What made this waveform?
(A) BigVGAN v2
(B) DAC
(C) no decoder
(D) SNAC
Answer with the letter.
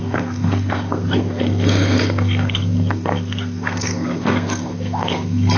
D